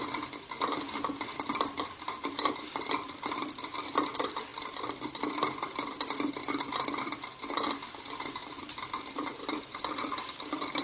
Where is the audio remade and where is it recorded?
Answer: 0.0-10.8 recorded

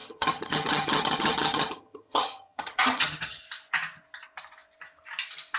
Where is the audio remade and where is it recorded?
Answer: 0.0-3.4 remade; 3.4-5.6 recorded

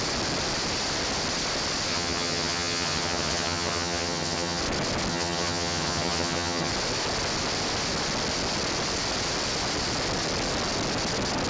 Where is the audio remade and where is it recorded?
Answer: 0.0-1.9 recorded; 1.9-4.6 remade; 4.6-5.1 recorded; 5.1-6.7 remade; 6.7-11.5 recorded

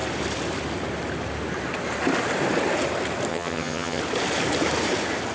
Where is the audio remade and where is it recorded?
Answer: 0.0-3.3 recorded; 3.3-4.0 remade; 4.0-5.3 recorded

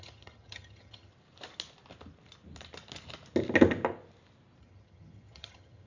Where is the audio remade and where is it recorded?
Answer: 0.0-1.1 remade; 1.1-4.6 recorded; 4.6-5.9 remade

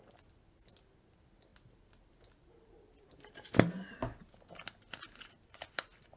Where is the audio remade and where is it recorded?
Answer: 0.0-6.2 recorded

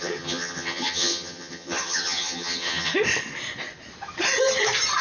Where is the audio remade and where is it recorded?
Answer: 0.0-2.9 remade; 2.9-5.0 recorded